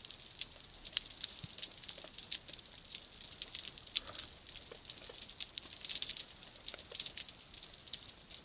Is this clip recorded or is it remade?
recorded